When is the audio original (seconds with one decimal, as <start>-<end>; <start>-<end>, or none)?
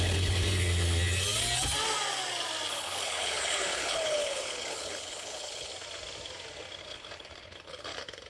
0.4-2.7; 5.7-6.8